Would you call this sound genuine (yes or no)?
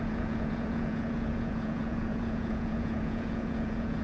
no